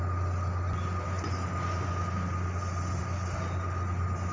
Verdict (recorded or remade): recorded